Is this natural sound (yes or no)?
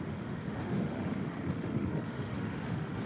no